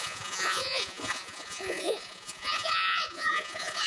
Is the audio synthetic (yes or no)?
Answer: yes